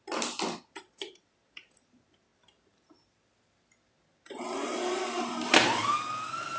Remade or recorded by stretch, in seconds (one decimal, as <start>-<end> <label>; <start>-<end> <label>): 0.0-6.6 recorded